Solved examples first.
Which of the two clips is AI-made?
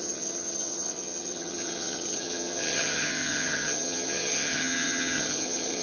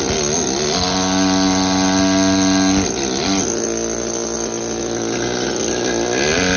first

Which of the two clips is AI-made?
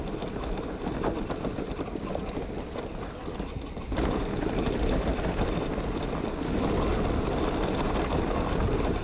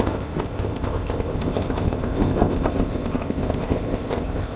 second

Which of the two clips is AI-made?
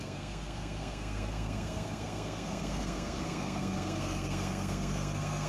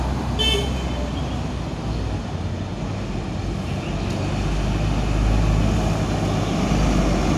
first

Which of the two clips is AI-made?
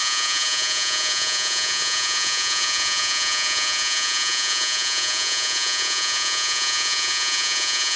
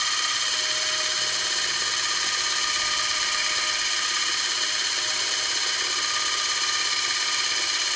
first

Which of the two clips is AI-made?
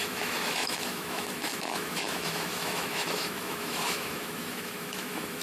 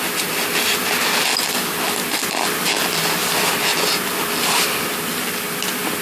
first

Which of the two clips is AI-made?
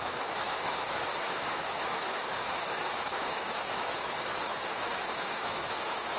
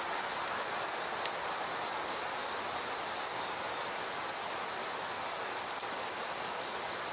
first